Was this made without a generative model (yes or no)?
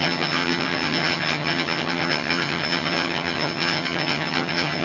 no